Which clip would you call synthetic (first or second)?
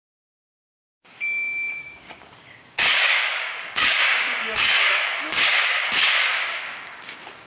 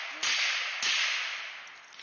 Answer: first